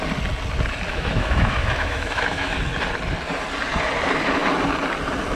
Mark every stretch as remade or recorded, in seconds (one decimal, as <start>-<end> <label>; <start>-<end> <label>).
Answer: 0.0-0.9 recorded; 0.9-2.6 remade; 2.6-5.3 recorded